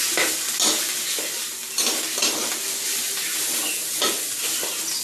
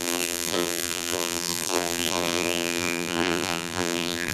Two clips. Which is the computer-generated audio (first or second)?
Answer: second